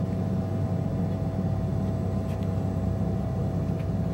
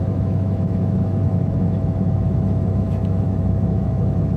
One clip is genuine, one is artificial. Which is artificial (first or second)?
second